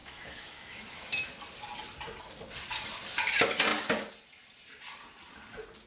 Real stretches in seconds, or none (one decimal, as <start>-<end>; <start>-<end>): 1.3-5.9